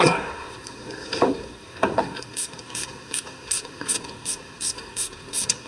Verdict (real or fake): fake